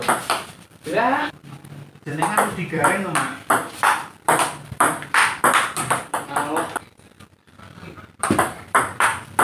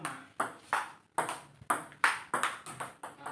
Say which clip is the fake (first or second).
first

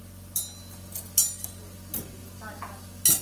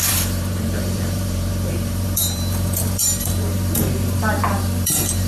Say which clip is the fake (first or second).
second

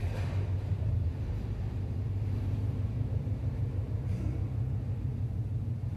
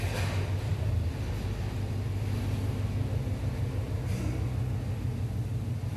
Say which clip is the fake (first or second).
first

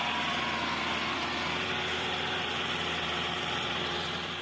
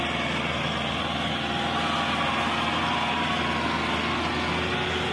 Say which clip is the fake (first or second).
first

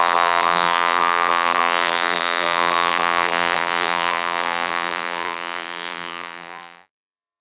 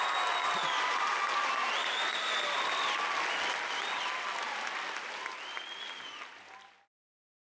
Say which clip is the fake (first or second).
first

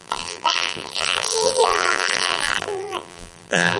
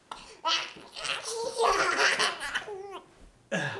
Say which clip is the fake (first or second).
first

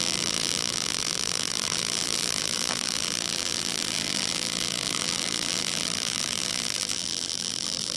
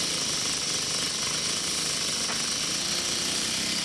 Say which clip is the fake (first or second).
first